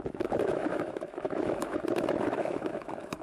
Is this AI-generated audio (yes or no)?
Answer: yes